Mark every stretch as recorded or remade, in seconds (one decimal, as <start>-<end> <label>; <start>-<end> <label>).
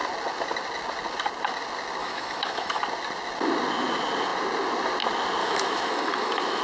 0.0-2.0 recorded; 2.0-2.8 remade; 2.8-5.4 recorded; 5.4-6.6 remade